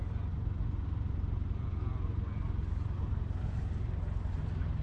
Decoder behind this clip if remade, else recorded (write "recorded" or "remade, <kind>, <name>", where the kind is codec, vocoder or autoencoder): recorded